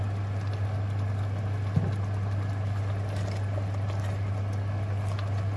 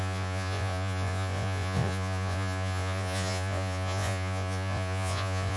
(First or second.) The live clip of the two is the first